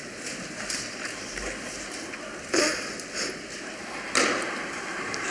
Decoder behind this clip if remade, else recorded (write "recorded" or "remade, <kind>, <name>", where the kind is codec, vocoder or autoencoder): recorded